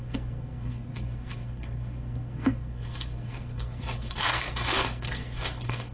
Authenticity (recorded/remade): remade